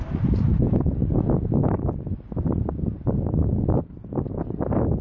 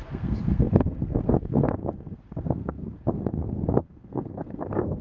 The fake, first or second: second